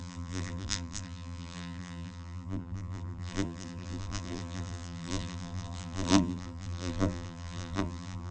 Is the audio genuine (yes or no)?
no